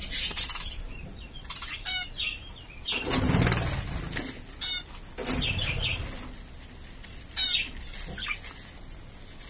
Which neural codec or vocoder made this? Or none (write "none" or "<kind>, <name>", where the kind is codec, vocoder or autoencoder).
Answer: none